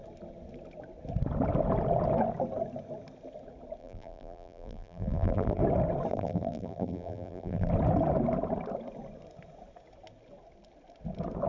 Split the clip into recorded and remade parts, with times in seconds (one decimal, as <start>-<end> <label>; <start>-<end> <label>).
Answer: 0.0-3.8 recorded; 3.8-5.6 remade; 5.6-6.1 recorded; 6.1-7.7 remade; 7.7-11.5 recorded